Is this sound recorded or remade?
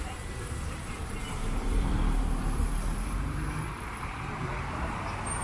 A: remade